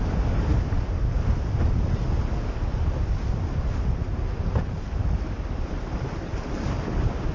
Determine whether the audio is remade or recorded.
recorded